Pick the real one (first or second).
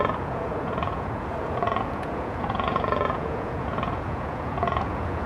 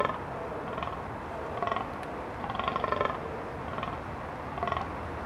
second